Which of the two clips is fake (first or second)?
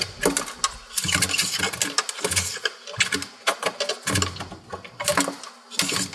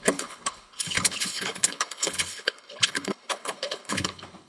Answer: second